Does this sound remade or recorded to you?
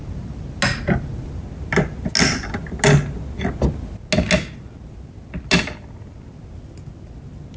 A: recorded